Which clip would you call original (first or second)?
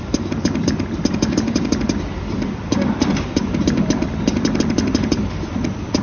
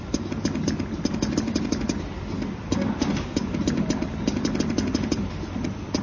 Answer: second